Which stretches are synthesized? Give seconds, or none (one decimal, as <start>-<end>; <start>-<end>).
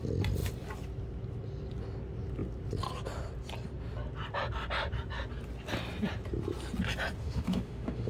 7.2-8.1